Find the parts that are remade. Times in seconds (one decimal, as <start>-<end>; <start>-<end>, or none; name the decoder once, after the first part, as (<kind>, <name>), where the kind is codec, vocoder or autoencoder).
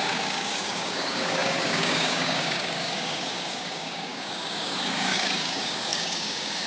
0.0-6.7 (codec, DAC)